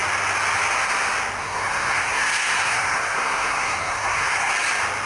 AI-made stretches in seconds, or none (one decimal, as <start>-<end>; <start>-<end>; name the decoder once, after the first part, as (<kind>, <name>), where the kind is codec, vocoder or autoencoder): 1.4-4.5 (codec, SNAC)